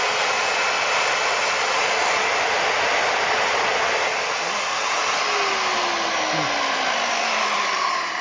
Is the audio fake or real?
real